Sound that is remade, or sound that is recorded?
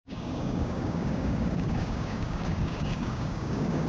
remade